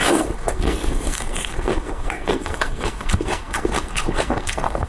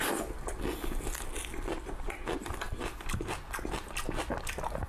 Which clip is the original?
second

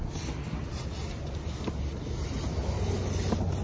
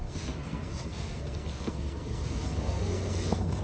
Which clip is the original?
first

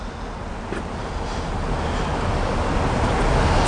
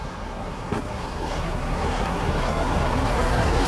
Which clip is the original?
first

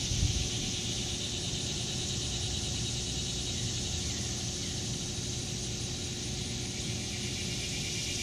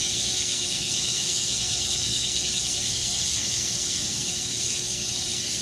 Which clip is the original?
first